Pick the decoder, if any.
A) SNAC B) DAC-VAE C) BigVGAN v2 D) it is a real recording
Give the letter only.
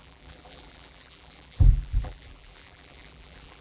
C